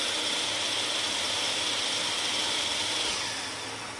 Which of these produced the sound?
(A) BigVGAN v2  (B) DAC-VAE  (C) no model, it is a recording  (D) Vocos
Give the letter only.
C